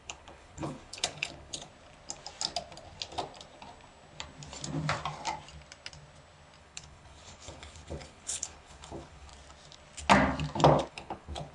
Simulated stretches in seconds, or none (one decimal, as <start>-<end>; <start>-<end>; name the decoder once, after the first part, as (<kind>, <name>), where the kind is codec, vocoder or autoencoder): 0.0-1.7 (codec, HILCodec); 6.6-9.3; 10.9-11.5